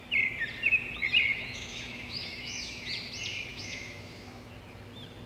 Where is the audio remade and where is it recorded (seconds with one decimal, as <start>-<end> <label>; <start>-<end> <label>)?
0.0-1.3 recorded; 1.3-2.9 remade; 2.9-3.5 recorded; 3.5-4.5 remade; 4.5-5.3 recorded